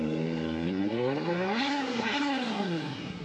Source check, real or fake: fake